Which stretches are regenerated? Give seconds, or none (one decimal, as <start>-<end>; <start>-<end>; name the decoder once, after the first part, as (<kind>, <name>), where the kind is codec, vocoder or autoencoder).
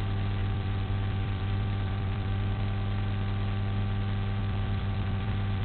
0.4-2.6 (vocoder, BigVGAN v2); 4.4-5.6